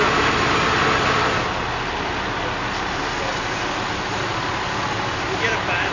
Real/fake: real